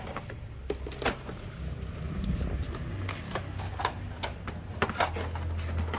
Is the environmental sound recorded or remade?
recorded